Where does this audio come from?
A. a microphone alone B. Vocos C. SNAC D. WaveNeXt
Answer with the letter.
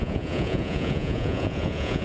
B